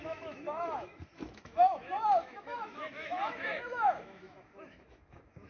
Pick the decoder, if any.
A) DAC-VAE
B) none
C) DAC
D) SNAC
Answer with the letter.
A